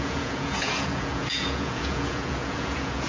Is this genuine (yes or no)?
no